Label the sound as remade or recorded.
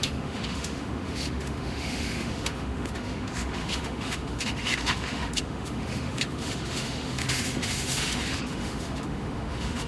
remade